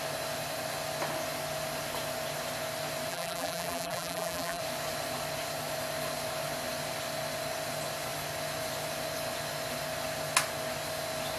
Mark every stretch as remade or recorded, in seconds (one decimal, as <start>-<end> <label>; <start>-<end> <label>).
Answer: 0.0-3.1 recorded; 3.1-4.6 remade; 4.6-11.4 recorded